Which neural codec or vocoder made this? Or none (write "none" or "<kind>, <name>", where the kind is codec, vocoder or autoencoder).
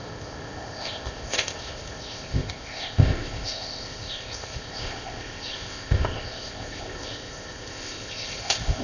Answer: codec, ZipCodec